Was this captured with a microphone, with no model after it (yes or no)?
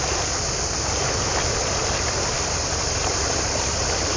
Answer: yes